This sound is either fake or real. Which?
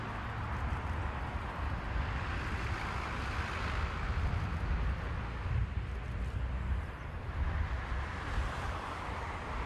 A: real